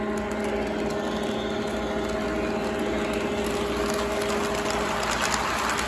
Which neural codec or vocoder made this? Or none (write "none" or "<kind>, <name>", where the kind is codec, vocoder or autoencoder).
none